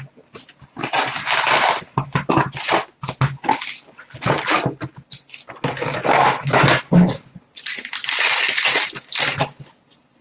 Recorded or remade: recorded